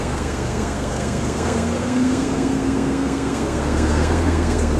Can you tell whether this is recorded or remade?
remade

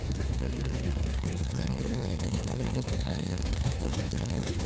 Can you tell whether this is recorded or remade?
remade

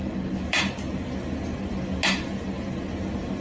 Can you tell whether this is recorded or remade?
recorded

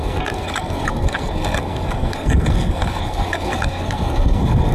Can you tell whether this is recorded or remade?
remade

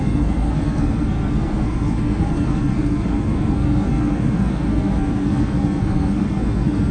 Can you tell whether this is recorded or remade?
remade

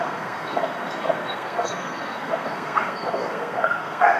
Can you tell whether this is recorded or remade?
remade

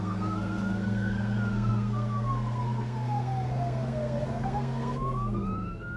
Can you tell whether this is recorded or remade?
remade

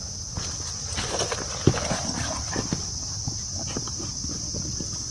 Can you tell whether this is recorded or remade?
recorded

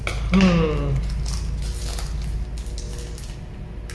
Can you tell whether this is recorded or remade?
recorded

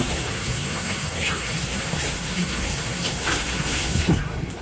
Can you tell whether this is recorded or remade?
remade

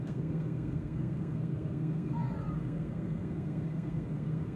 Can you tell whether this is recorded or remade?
remade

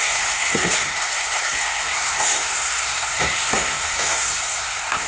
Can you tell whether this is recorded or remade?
remade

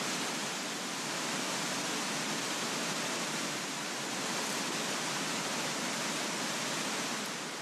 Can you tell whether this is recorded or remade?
recorded